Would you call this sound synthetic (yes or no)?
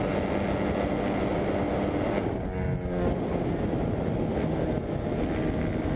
no